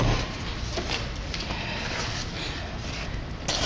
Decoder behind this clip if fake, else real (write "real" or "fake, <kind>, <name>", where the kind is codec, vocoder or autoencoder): real